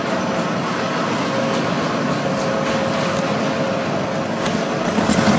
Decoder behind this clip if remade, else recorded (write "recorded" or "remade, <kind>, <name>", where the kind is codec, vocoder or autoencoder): recorded